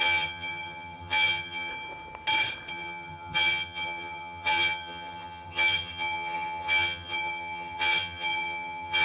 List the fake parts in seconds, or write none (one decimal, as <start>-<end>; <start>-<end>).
0.0-1.7; 2.7-9.0